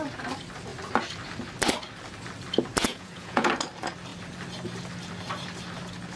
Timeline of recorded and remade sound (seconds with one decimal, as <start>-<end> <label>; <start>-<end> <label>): 0.0-2.8 recorded; 2.8-3.5 remade; 3.5-6.2 recorded